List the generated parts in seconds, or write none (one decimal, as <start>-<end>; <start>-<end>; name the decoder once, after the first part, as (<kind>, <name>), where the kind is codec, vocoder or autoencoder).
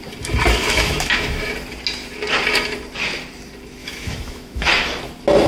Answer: 0.6-1.5 (autoencoder, DAC-VAE); 3.8-4.7